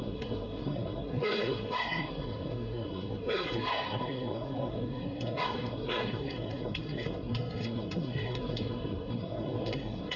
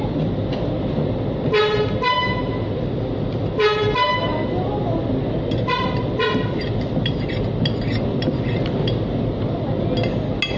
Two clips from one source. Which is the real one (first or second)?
second